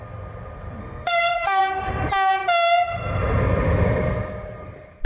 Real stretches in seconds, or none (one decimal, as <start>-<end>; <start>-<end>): 0.0-0.8; 1.6-5.1